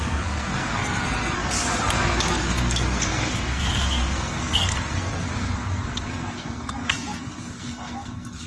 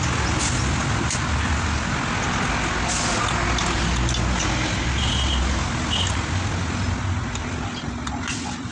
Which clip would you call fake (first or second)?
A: first